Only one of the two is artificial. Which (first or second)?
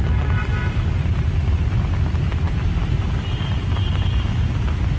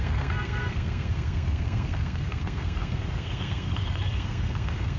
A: second